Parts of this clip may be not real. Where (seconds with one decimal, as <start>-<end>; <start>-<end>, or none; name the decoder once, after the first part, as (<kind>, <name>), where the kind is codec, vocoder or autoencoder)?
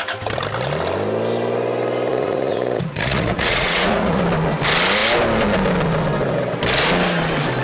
2.1-4.2 (vocoder, Vocos)